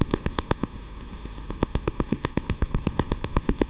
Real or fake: fake